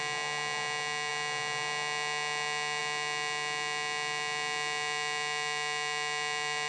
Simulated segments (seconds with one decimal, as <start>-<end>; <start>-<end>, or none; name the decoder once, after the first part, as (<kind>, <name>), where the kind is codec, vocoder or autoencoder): none